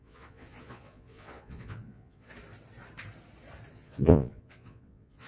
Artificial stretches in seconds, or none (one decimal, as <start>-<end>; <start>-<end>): 0.0-2.3; 3.7-5.3